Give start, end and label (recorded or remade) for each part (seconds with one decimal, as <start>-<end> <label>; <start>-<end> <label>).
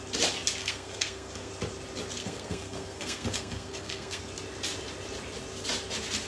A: 0.0-0.6 recorded; 0.6-1.5 remade; 1.5-2.2 recorded; 2.2-4.2 remade; 4.2-6.3 recorded